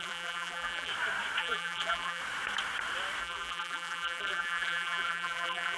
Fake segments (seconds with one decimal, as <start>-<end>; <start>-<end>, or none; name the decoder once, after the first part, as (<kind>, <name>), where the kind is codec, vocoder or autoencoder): 0.0-0.9 (vocoder, BigVGAN v2); 1.4-2.2; 3.2-5.8